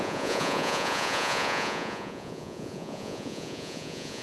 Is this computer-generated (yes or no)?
yes